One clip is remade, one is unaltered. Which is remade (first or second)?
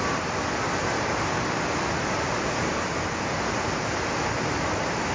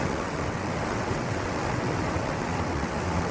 second